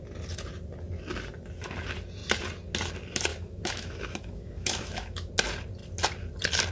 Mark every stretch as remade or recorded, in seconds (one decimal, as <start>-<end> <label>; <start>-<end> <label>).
0.0-3.3 recorded; 3.3-5.3 remade; 5.3-6.7 recorded